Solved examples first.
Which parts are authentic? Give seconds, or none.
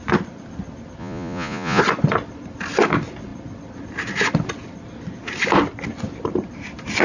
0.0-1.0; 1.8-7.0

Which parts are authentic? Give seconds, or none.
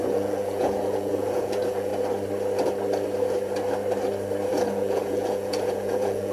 1.9-4.5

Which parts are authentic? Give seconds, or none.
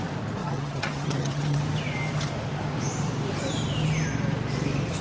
0.0-0.4; 1.6-5.0